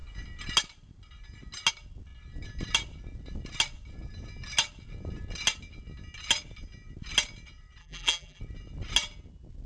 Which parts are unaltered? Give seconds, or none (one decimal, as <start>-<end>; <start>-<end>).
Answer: 0.0-7.8; 8.4-9.7